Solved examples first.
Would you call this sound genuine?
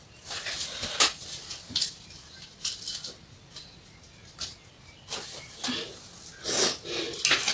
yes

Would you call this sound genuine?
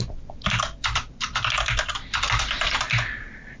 no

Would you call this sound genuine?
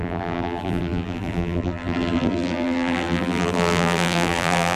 no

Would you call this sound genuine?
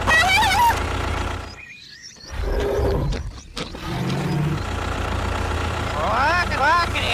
yes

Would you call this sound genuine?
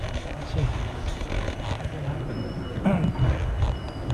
yes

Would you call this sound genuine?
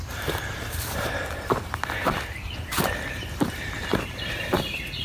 no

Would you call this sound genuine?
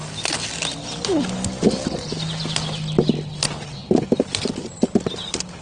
yes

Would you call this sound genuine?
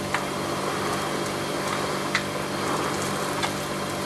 yes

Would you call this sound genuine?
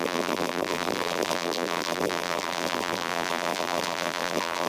no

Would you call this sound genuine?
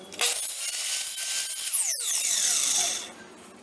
yes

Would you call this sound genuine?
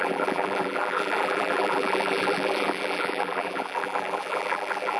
no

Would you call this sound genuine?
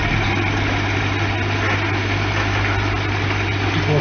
yes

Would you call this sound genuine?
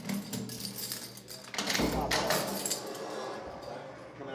yes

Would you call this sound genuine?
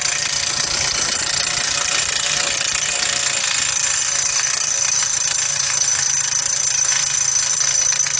no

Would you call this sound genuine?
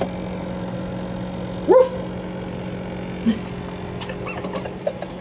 yes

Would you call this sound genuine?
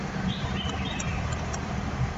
no